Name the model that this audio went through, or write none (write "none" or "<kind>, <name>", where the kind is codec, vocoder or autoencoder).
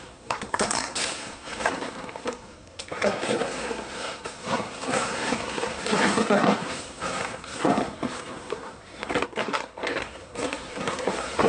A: codec, SNAC